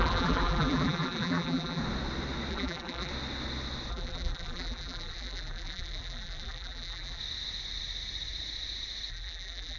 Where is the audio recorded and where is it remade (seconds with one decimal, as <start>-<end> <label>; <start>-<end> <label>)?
0.0-1.8 remade; 1.8-2.5 recorded; 2.5-3.1 remade; 3.1-3.9 recorded; 3.9-7.2 remade; 7.2-9.1 recorded; 9.1-9.8 remade